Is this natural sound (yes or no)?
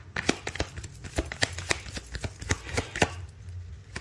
yes